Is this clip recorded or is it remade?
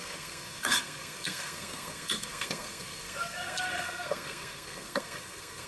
remade